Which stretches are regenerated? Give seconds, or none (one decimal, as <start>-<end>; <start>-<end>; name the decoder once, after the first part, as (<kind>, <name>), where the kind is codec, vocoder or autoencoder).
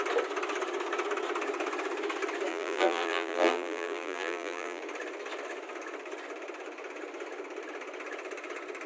2.5-4.8 (vocoder, BigVGAN v2)